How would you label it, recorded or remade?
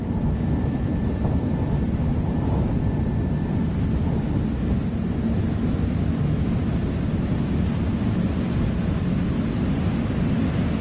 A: recorded